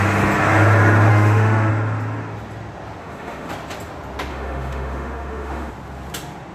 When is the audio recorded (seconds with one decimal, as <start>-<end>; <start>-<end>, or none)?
0.0-1.1; 1.7-3.0; 3.5-4.3; 5.7-6.5